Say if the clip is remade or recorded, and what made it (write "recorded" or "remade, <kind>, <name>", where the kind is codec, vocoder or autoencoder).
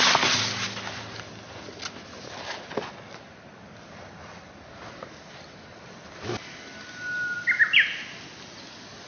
recorded